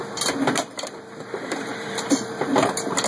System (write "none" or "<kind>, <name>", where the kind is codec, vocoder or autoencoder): vocoder, BigVGAN v2